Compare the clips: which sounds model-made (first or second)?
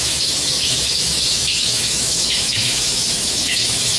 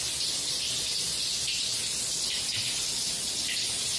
first